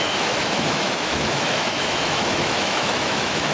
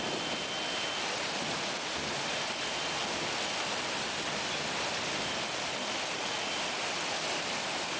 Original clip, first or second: second